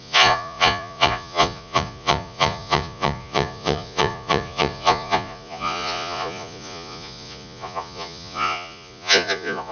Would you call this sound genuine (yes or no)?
no